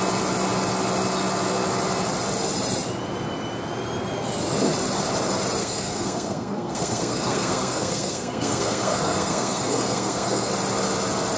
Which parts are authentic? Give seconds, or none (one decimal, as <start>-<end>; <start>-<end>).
0.0-5.6; 10.5-11.4